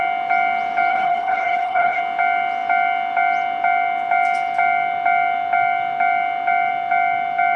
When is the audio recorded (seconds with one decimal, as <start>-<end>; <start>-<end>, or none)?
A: 0.0-0.9; 2.0-7.6